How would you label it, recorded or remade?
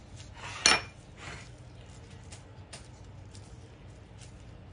recorded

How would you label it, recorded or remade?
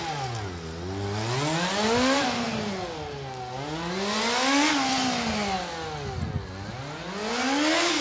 recorded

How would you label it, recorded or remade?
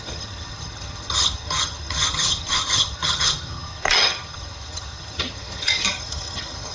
remade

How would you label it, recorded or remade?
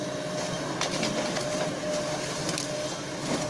recorded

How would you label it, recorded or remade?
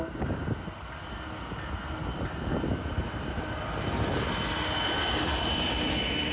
recorded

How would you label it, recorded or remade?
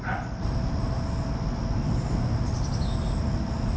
recorded